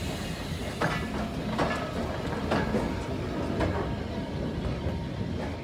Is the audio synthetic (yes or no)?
no